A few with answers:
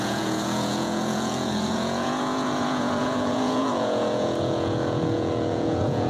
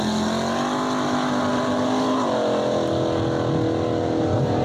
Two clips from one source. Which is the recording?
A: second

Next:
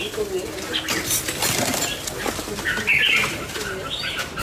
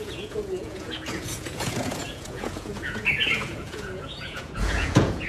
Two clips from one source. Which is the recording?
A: first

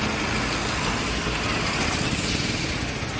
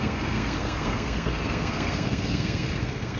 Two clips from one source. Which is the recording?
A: first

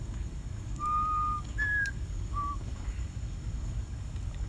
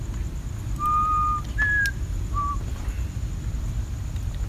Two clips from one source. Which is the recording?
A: second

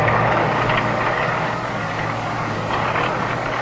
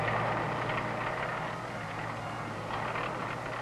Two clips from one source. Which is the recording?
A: second